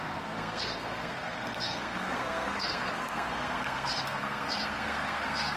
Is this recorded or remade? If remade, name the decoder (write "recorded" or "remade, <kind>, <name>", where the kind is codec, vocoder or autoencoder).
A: remade, codec, SNAC